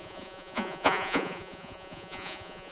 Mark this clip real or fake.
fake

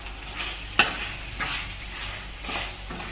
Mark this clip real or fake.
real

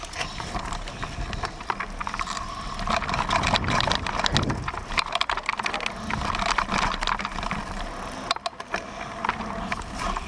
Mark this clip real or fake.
real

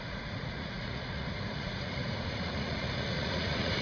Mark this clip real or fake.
fake